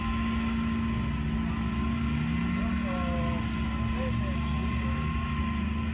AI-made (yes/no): no